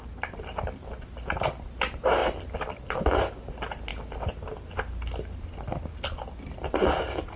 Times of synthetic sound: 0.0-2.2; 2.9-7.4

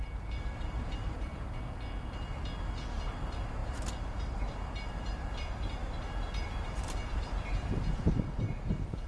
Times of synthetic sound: 0.0-1.3; 2.9-9.1

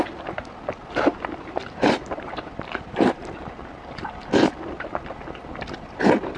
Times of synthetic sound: 1.1-4.9